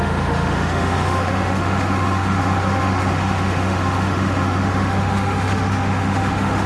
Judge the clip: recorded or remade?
remade